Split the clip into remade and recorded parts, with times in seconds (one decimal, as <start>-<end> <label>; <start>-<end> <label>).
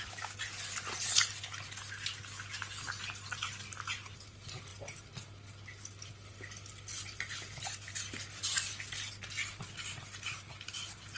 0.0-11.2 recorded